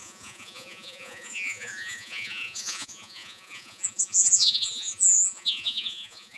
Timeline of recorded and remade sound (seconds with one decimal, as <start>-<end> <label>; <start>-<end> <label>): 0.0-6.4 remade